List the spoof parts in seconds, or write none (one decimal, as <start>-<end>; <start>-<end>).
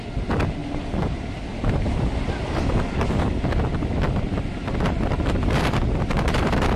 0.6-3.2; 4.6-6.8